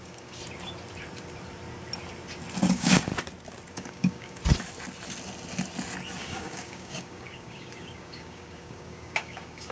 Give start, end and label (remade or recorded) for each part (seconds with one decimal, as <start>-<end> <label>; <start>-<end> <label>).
0.0-0.4 remade; 0.4-2.7 recorded; 2.7-3.1 remade; 3.1-3.7 recorded; 3.7-4.4 remade; 4.4-6.2 recorded; 6.2-9.7 remade